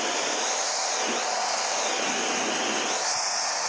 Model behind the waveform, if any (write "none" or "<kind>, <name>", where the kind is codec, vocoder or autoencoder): none